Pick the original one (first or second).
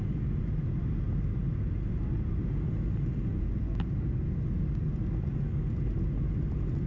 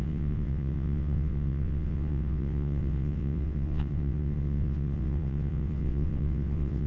first